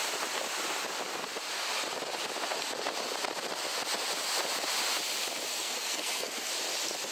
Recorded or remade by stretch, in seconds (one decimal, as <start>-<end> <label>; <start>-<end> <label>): 0.0-5.5 recorded; 5.5-6.5 remade; 6.5-7.1 recorded